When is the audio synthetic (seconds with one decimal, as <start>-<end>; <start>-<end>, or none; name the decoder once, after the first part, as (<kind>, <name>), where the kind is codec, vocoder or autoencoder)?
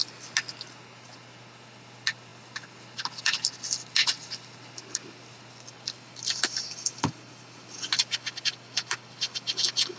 none